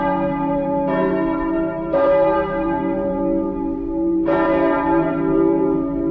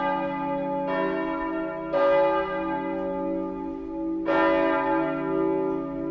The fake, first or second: first